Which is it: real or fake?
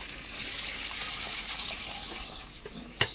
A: fake